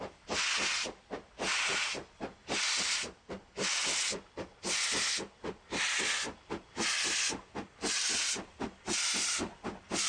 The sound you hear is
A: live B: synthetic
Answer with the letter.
A